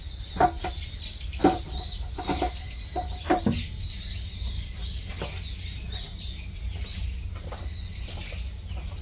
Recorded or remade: recorded